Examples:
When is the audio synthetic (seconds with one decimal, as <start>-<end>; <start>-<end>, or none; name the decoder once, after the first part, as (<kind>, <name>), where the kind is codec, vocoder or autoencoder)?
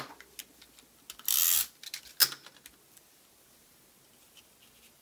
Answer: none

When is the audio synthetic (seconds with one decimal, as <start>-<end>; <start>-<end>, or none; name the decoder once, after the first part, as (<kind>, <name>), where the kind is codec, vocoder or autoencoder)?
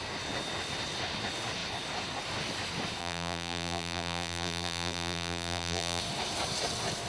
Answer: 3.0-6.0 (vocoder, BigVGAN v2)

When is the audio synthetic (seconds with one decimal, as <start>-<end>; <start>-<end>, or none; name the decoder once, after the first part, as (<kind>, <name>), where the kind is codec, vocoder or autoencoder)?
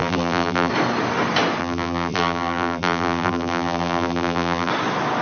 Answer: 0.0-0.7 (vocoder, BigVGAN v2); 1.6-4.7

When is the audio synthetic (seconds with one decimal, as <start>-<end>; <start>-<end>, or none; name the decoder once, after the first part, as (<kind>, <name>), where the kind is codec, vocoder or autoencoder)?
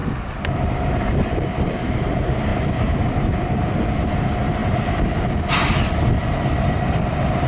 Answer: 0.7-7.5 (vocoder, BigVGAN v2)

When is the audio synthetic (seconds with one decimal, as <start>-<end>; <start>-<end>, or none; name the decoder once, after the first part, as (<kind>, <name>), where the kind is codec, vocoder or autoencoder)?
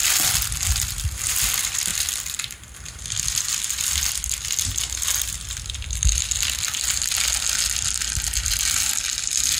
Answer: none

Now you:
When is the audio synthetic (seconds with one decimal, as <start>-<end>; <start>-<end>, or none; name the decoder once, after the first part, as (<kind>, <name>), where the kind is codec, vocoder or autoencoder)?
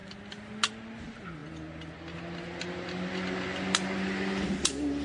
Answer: none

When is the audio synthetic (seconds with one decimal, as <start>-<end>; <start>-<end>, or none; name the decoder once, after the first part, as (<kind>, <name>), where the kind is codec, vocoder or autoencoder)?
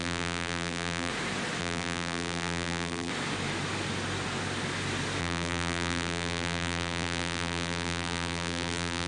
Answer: 0.0-1.1 (vocoder, BigVGAN v2); 1.6-3.1; 5.2-9.1